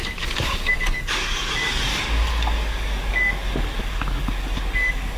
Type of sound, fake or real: fake